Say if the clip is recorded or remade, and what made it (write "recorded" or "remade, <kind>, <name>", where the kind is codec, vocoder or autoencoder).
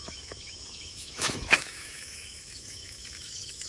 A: remade, autoencoder, DAC-VAE